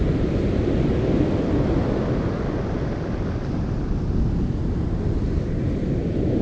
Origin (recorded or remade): recorded